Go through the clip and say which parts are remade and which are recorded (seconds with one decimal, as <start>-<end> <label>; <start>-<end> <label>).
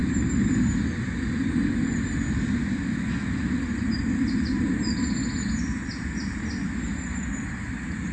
0.0-8.1 recorded